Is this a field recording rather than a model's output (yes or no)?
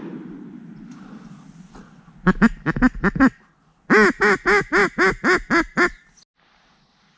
yes